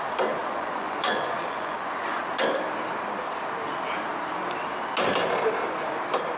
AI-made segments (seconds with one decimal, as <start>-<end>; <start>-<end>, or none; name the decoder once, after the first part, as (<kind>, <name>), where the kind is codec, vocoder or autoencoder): 0.4-2.2 (vocoder, Vocos)